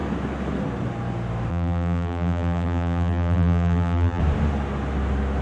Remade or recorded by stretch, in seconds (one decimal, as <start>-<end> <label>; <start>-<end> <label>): 0.0-1.5 recorded; 1.5-4.2 remade; 4.2-5.4 recorded